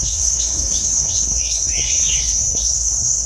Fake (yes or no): yes